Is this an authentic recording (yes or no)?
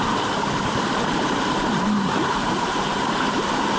no